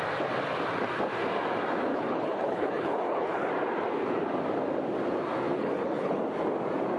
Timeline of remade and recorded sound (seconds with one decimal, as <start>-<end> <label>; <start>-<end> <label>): 0.0-1.9 recorded; 1.9-3.5 remade; 3.5-5.6 recorded; 5.6-6.2 remade; 6.2-7.0 recorded